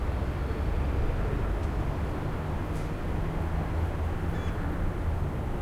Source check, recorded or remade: recorded